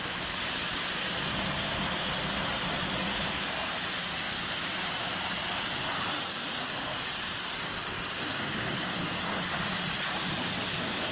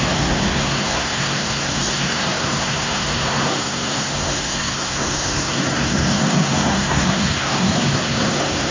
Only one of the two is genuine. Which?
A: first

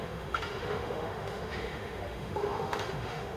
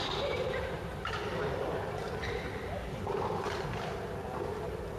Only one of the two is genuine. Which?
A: second